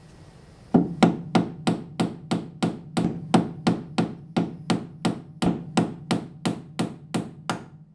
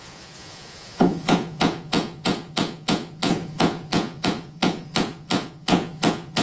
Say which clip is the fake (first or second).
second